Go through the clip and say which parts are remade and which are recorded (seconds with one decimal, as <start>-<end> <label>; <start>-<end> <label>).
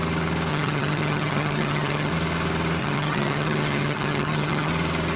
0.0-0.5 recorded; 0.5-2.1 remade; 2.1-2.8 recorded; 2.8-4.7 remade; 4.7-5.2 recorded